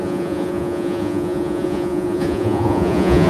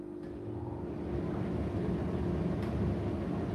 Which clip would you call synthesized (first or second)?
first